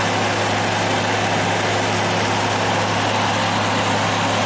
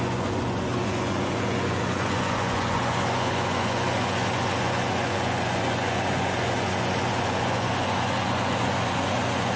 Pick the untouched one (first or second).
first